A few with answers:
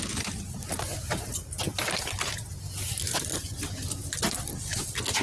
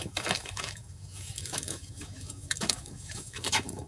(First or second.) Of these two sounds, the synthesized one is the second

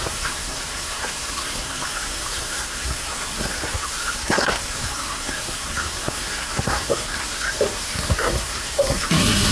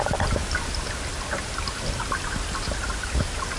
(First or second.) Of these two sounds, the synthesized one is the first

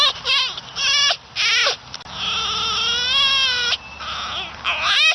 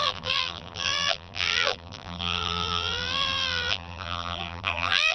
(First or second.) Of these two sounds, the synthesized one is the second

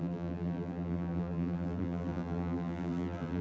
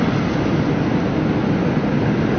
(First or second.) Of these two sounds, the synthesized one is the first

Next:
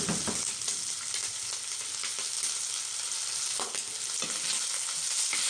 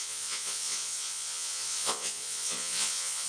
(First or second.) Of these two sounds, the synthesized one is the second